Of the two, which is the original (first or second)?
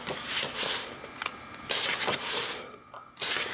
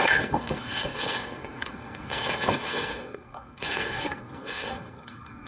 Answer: first